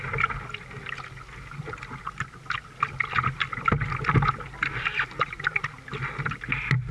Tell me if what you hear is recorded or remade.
recorded